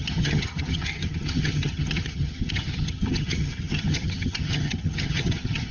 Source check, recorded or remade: remade